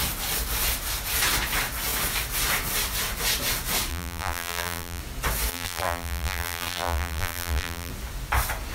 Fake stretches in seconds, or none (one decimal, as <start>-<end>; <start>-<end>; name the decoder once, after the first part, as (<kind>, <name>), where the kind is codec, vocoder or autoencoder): 3.9-5.0 (vocoder, BigVGAN v2); 5.5-7.9